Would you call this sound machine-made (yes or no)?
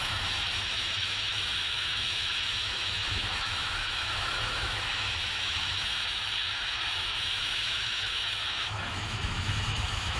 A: yes